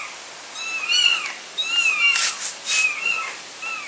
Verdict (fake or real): real